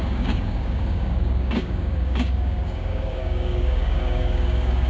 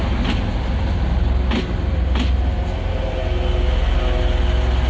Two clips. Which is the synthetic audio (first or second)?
first